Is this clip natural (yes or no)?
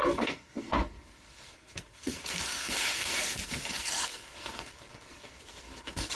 no